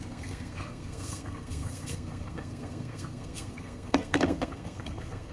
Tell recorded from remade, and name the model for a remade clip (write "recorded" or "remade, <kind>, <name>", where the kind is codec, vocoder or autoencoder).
remade, codec, SNAC